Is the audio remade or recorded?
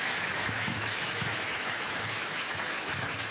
remade